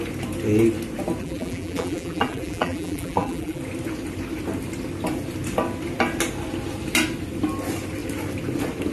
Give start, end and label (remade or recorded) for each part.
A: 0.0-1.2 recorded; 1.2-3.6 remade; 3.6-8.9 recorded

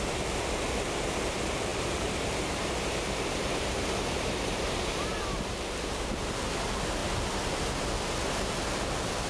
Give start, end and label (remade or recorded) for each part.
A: 0.0-1.7 recorded; 1.7-6.3 remade; 6.3-9.3 recorded